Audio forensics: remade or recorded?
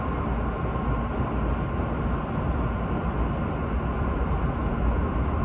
recorded